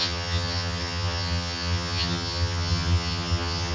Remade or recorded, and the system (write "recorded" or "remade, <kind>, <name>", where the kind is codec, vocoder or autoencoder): remade, vocoder, HiFi-GAN